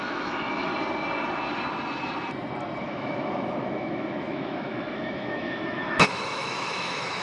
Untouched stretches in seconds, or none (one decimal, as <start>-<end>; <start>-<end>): 0.7-2.8